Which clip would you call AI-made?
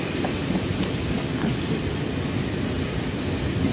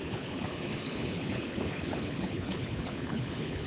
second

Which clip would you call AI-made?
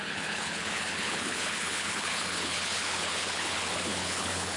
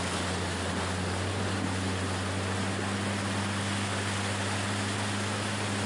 first